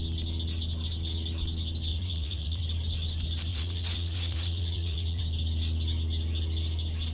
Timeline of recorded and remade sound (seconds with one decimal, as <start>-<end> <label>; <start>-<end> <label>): 0.0-1.9 recorded; 1.9-2.6 remade; 2.6-3.5 recorded; 3.5-5.2 remade; 5.2-7.1 recorded